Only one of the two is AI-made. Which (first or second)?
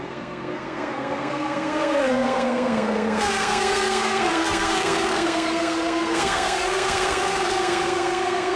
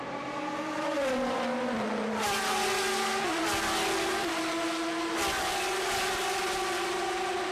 first